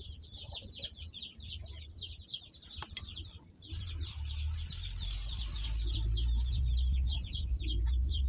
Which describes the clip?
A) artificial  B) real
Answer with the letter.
B